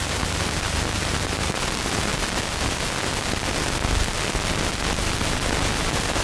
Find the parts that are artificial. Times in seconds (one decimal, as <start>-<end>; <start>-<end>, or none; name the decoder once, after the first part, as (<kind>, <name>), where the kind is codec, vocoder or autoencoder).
none